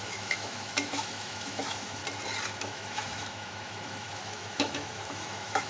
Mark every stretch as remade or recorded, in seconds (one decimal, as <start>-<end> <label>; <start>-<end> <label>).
0.0-2.0 remade; 2.0-2.6 recorded; 2.6-5.7 remade